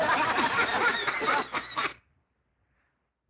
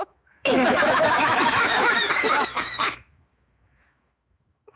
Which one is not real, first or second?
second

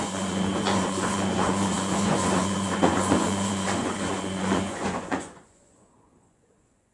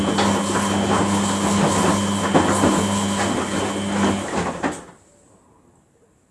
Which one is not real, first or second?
first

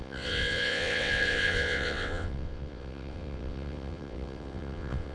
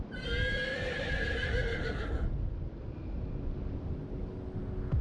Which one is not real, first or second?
first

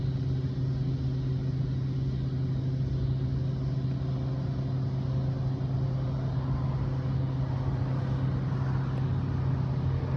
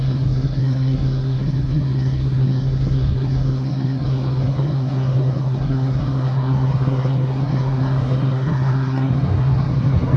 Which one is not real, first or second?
second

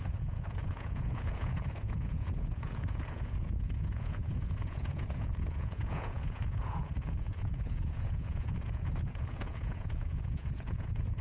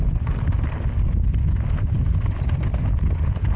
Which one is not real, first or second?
first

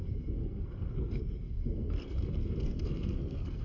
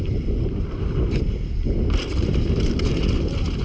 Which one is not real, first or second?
first